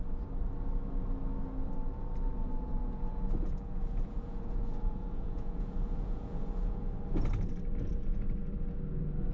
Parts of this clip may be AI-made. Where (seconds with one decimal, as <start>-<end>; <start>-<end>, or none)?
2.7-6.9